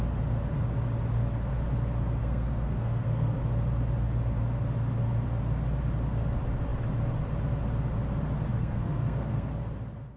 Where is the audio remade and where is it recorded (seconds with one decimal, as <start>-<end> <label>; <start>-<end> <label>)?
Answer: 0.0-2.2 recorded; 2.2-3.4 remade; 3.4-8.6 recorded; 8.6-9.5 remade; 9.5-10.2 recorded